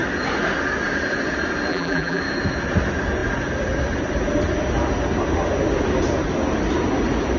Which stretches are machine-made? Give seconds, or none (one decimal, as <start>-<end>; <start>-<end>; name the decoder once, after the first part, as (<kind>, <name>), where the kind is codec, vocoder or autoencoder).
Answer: 1.7-2.2 (vocoder, BigVGAN v2)